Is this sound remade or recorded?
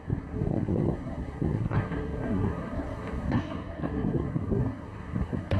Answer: remade